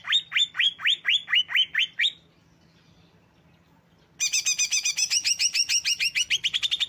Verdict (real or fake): real